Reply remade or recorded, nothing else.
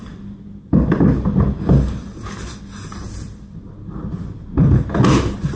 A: recorded